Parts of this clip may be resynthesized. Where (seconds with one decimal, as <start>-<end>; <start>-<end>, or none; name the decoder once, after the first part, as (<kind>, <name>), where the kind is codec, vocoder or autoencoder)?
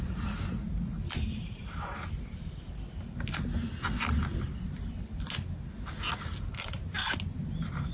none